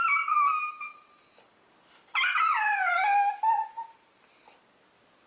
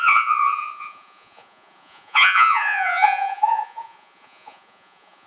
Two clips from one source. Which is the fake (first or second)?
second